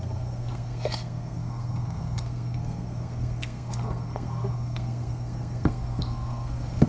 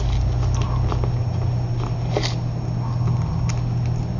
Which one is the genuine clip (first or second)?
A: second